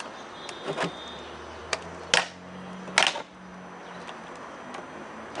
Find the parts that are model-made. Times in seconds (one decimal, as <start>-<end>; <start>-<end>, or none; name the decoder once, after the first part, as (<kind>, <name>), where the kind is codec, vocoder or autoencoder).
none